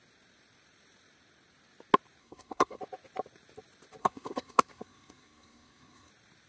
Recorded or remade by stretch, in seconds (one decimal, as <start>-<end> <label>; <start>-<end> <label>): 0.0-2.2 recorded; 2.2-2.8 remade; 2.8-4.0 recorded; 4.0-6.1 remade; 6.1-6.5 recorded

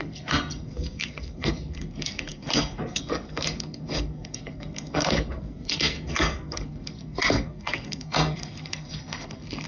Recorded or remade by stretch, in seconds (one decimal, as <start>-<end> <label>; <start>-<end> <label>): 0.0-9.7 remade

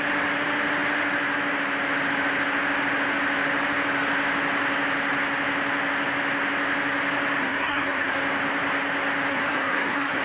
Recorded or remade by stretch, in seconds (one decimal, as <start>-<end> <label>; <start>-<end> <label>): 0.0-7.4 recorded; 7.4-8.2 remade; 8.2-9.3 recorded; 9.3-10.2 remade

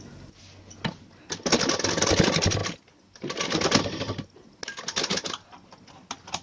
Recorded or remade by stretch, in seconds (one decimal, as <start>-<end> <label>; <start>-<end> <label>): 0.0-6.4 recorded

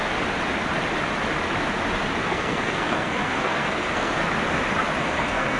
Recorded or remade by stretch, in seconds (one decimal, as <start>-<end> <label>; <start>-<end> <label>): 0.0-2.2 recorded; 2.2-4.2 remade; 4.2-5.0 recorded; 5.0-5.6 remade